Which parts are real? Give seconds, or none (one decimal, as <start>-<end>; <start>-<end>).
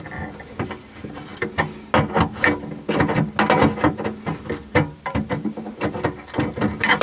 1.3-4.7